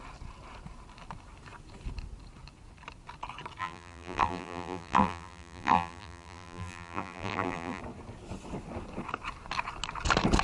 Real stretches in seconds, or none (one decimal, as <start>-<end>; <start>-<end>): 0.0-3.6; 7.8-10.4

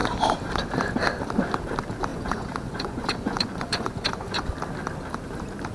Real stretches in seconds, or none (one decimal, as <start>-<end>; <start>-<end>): 0.0-2.1; 4.4-5.7

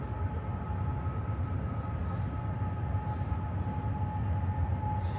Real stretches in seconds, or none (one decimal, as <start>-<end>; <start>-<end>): 0.0-5.2

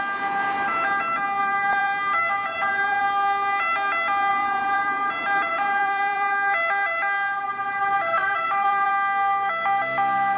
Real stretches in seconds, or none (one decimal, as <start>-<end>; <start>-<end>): 0.0-1.4; 3.0-4.3; 6.3-8.2; 8.9-10.4

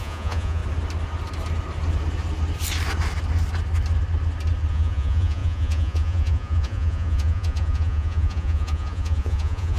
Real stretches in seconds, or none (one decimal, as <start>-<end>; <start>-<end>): 0.6-4.7

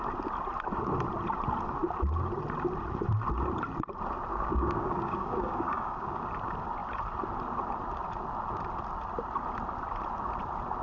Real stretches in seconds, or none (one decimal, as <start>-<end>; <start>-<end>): 0.0-4.3; 6.2-10.8